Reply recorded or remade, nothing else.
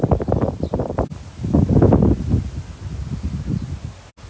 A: recorded